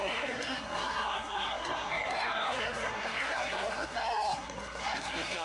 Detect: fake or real fake